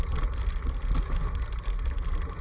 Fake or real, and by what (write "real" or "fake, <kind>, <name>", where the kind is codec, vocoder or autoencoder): real